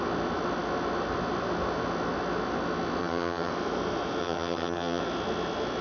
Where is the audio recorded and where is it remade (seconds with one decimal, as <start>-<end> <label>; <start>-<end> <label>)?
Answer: 0.0-3.0 recorded; 3.0-3.5 remade; 3.5-4.2 recorded; 4.2-5.0 remade; 5.0-5.8 recorded